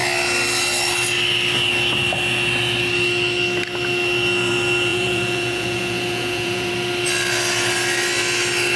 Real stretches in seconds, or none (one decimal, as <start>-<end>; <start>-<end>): 0.0-4.9; 6.7-8.8